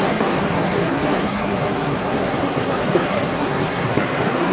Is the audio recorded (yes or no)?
no